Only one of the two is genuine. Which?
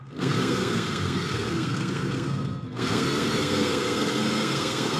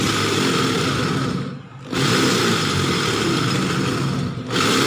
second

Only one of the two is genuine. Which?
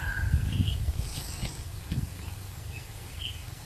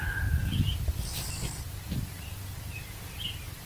second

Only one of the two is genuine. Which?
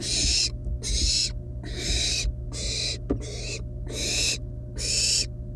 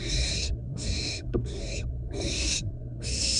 first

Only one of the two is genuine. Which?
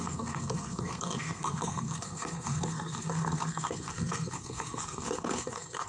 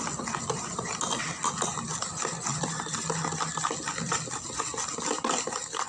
second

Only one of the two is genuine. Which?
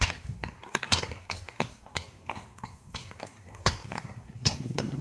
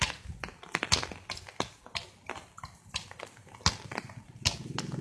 second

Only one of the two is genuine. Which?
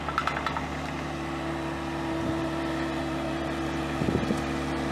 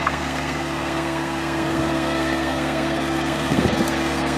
first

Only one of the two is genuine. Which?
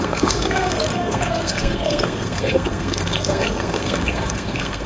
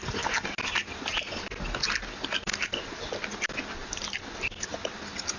second